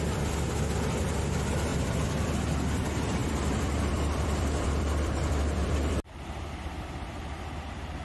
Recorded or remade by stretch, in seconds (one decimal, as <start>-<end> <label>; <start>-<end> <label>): 0.0-1.7 recorded; 1.7-2.3 remade; 2.3-3.2 recorded; 3.2-6.2 remade; 6.2-8.0 recorded